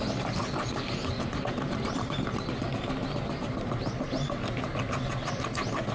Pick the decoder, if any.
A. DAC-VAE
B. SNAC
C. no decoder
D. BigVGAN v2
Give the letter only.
C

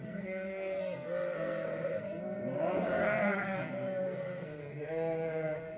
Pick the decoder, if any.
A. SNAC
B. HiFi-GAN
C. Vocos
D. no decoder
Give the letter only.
A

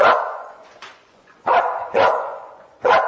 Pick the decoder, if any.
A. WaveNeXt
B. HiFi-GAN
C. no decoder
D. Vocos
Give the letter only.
D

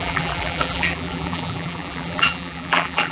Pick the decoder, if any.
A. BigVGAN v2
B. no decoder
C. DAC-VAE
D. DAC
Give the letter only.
A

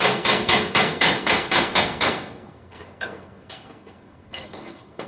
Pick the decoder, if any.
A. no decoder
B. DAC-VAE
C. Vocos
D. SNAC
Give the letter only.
D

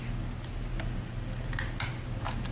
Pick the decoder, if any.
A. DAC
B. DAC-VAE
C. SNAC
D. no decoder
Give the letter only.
D